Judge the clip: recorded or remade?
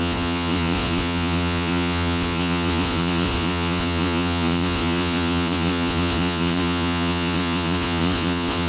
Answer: remade